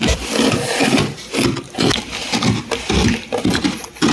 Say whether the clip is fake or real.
real